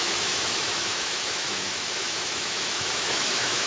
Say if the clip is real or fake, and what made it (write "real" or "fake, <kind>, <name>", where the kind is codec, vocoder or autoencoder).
fake, autoencoder, DAC-VAE